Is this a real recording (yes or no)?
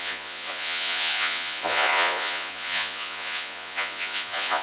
no